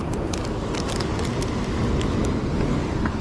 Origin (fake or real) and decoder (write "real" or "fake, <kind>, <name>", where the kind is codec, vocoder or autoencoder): real